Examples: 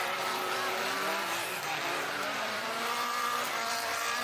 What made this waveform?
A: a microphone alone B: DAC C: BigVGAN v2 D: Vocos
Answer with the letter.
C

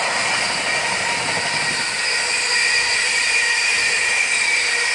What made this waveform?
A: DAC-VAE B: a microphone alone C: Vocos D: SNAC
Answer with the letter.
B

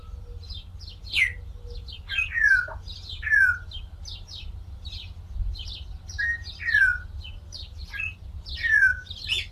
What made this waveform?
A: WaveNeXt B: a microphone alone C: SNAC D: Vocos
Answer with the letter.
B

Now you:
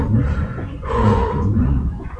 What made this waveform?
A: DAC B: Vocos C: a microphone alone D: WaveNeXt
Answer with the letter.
B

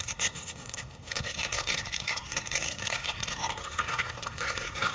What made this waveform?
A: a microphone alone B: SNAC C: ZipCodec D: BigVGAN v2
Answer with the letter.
B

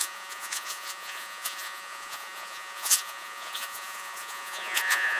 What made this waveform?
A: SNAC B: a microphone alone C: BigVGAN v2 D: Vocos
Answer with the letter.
D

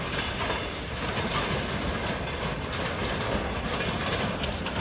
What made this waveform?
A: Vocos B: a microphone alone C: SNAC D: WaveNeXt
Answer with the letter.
B